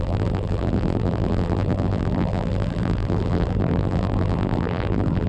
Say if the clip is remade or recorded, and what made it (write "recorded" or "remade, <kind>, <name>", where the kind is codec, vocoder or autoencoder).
remade, vocoder, BigVGAN v2